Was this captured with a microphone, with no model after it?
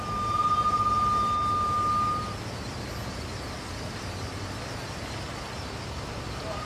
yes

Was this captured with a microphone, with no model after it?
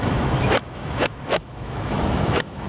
no